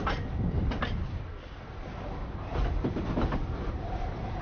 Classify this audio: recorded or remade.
remade